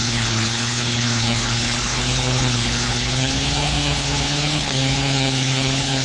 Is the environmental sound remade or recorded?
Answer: remade